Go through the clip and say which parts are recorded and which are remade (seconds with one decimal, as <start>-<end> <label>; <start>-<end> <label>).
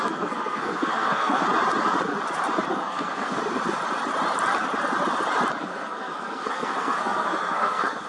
0.0-1.4 remade; 1.4-2.7 recorded; 2.7-3.4 remade; 3.4-5.6 recorded; 5.6-8.1 remade